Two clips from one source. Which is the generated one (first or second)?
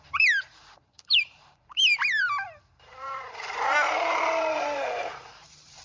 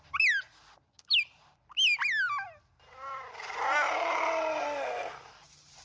first